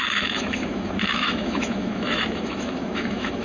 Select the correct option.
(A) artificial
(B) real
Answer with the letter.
A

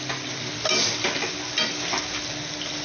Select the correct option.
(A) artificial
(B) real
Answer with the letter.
B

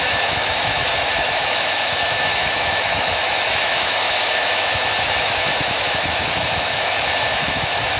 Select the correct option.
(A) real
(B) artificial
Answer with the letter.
B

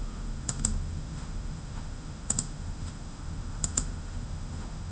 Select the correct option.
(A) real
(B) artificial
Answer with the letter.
B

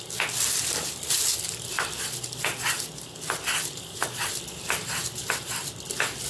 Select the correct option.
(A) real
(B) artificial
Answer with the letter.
A